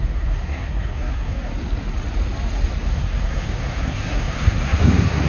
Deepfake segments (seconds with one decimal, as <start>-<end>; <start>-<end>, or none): 0.0-1.5; 2.9-5.3

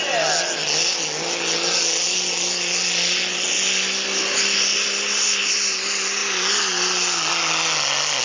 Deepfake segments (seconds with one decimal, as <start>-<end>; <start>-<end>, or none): none

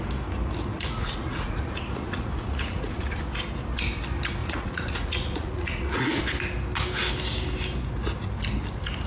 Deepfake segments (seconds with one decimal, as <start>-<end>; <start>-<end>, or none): 0.7-3.2; 4.4-6.2